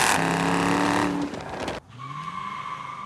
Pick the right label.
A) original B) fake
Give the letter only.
A